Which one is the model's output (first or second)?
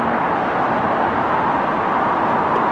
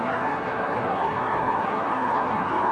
second